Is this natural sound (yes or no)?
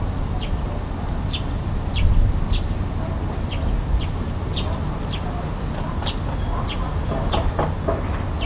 yes